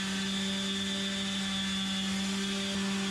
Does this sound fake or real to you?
real